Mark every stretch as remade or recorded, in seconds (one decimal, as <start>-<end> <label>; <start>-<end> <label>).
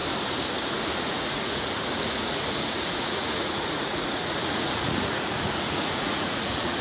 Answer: 0.0-1.0 recorded; 1.0-6.8 remade